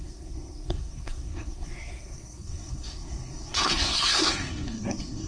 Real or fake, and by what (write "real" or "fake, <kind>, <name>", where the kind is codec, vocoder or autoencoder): fake, codec, SNAC